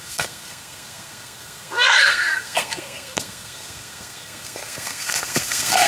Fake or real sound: fake